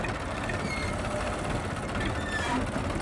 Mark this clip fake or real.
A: real